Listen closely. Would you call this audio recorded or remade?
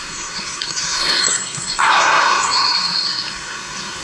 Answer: remade